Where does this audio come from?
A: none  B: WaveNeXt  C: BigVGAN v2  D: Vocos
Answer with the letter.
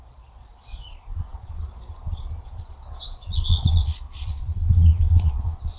D